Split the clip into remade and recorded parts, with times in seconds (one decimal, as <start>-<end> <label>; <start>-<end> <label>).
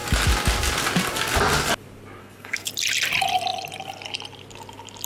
0.0-2.2 recorded; 2.2-2.7 remade; 2.7-5.1 recorded